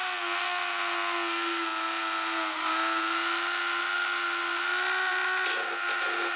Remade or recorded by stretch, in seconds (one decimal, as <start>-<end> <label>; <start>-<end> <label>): 0.0-6.4 recorded

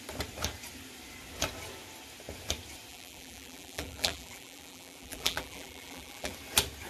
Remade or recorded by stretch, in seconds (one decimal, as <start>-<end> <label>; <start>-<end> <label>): 0.0-2.9 recorded; 2.9-6.3 remade; 6.3-6.9 recorded

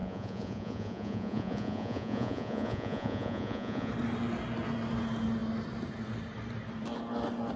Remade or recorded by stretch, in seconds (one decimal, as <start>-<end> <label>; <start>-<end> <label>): 0.0-3.9 remade; 3.9-7.6 recorded

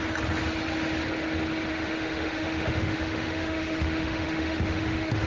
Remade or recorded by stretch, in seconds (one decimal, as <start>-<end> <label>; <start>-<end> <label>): 0.0-1.7 recorded; 1.7-5.3 remade

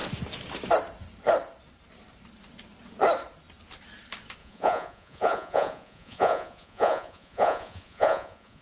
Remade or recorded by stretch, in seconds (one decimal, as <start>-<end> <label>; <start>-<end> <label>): 0.0-4.4 recorded; 4.4-8.6 remade

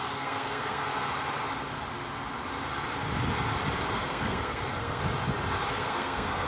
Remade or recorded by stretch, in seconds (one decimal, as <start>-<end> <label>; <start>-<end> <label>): 0.0-0.8 remade; 0.8-3.9 recorded; 3.9-5.0 remade; 5.0-5.7 recorded; 5.7-6.5 remade

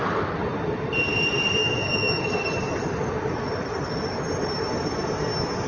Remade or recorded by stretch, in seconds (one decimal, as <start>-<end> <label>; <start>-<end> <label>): 0.0-1.6 recorded; 1.6-2.3 remade; 2.3-5.7 recorded